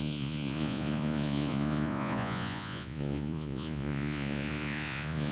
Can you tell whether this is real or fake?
fake